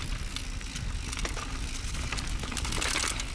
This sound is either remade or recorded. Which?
recorded